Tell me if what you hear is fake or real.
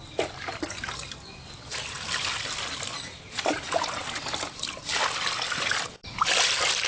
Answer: real